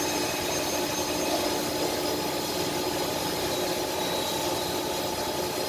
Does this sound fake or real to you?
real